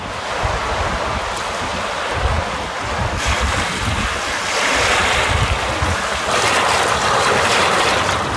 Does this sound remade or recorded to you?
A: recorded